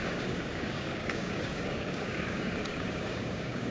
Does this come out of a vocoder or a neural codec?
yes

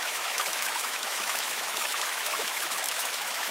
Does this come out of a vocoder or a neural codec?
yes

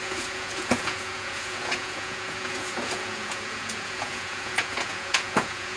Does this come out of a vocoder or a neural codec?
yes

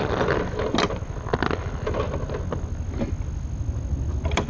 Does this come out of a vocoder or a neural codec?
no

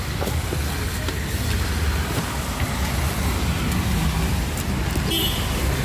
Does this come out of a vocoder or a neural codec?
no